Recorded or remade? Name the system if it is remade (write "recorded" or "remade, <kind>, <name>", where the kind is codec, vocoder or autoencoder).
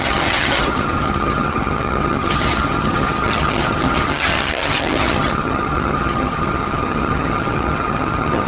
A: remade, vocoder, HiFi-GAN